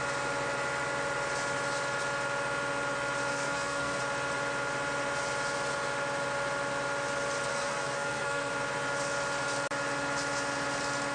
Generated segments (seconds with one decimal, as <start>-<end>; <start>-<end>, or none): 3.3-4.0; 7.5-8.5